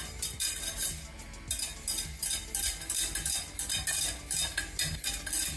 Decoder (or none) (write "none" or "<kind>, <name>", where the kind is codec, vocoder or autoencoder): none